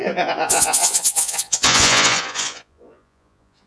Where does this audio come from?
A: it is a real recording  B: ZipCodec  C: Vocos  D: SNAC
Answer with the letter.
C